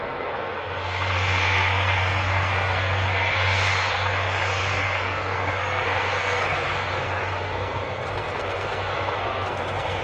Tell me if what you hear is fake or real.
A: fake